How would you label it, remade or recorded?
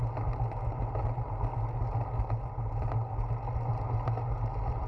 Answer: recorded